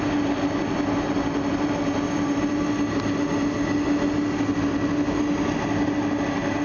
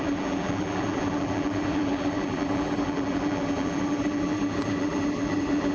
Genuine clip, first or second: first